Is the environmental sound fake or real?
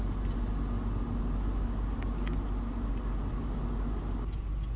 real